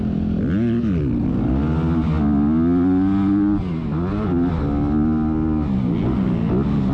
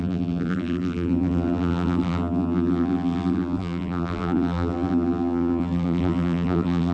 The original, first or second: first